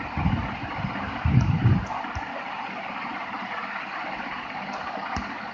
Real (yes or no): yes